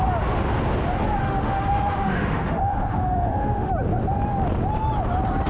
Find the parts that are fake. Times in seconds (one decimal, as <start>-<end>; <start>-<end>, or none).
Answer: 1.2-3.7